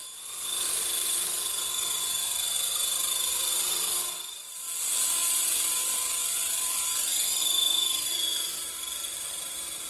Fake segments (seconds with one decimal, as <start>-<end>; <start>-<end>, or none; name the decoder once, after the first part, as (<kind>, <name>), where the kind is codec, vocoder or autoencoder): 0.0-9.9 (vocoder, BigVGAN v2)

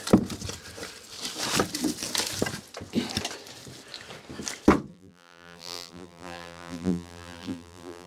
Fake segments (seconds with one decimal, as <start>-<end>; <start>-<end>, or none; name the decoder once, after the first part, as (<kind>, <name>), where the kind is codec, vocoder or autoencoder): 4.9-8.1 (vocoder, BigVGAN v2)

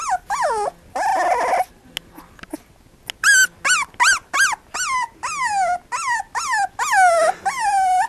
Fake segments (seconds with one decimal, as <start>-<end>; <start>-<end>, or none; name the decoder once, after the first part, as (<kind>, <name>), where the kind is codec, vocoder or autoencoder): none